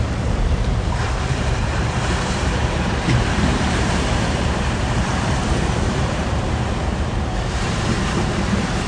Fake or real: fake